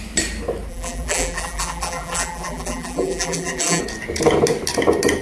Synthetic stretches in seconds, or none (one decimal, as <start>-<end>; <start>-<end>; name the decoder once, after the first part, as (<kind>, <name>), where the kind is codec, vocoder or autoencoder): 0.7-3.8 (vocoder, BigVGAN v2)